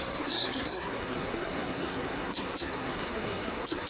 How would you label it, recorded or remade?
remade